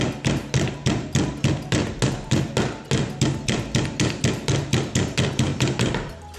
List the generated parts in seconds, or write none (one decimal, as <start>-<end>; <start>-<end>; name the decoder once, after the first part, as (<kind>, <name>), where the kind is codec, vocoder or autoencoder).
none